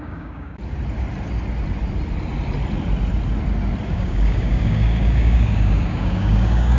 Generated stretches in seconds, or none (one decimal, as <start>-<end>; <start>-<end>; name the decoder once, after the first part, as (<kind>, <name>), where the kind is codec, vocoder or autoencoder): 0.0-0.6 (codec, DAC); 3.9-6.8